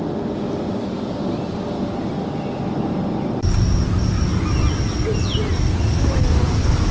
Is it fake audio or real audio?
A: real